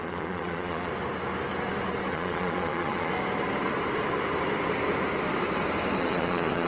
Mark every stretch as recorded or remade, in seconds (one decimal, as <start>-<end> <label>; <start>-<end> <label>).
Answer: 0.0-0.9 remade; 0.9-2.1 recorded; 2.1-3.1 remade; 3.1-6.0 recorded; 6.0-6.7 remade